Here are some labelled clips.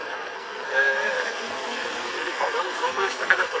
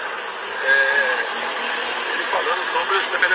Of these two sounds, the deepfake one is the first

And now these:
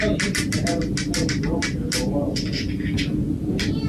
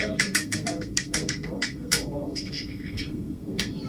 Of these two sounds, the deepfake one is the second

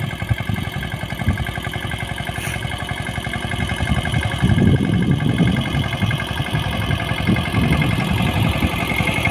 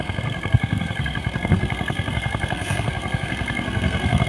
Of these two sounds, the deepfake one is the second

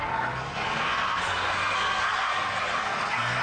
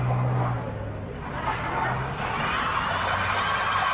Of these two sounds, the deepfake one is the first